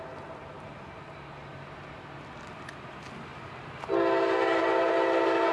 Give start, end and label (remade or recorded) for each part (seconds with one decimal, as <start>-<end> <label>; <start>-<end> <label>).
0.0-5.5 recorded